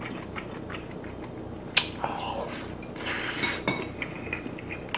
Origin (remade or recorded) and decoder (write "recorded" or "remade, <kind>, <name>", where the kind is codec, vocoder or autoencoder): recorded